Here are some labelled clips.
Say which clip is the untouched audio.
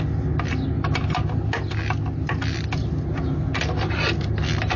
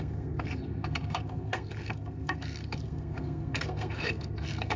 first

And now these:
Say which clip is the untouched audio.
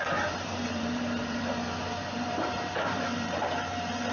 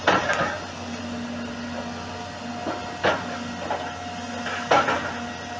second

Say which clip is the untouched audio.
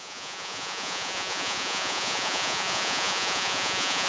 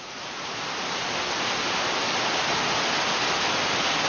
second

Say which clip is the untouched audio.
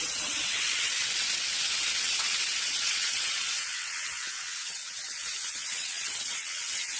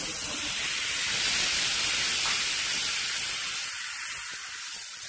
second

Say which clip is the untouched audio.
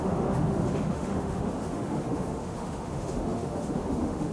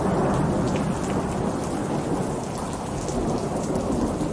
second